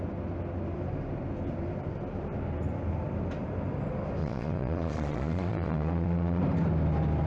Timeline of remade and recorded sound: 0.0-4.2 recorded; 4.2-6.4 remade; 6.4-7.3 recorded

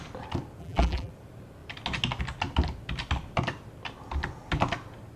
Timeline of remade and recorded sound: 0.0-0.6 recorded; 0.6-1.1 remade; 1.1-5.2 recorded

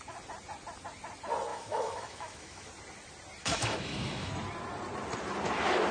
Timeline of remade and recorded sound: 0.0-1.5 recorded; 1.5-2.7 remade; 2.7-3.4 recorded; 3.4-4.3 remade; 4.3-5.9 recorded

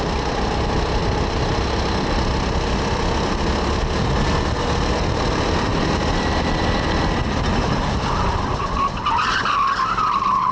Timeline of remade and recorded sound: 0.0-10.5 recorded

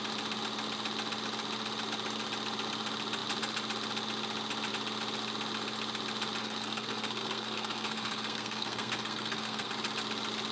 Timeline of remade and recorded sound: 0.0-6.4 recorded; 6.4-9.7 remade; 9.7-10.5 recorded